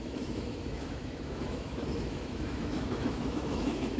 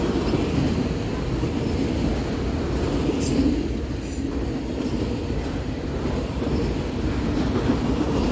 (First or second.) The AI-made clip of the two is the first